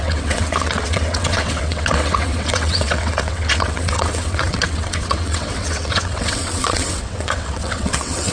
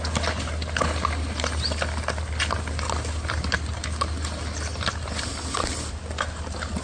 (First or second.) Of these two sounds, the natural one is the second